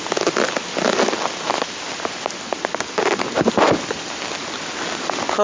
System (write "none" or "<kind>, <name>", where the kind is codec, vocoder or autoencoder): none